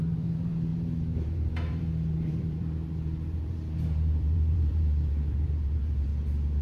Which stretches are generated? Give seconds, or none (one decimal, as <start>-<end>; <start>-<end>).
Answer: 0.0-6.1